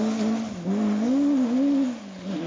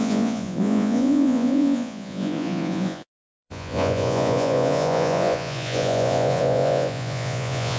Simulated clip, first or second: second